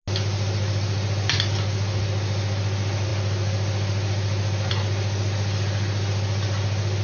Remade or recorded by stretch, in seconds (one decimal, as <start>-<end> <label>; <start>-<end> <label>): 0.0-7.0 recorded